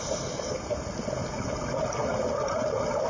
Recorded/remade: recorded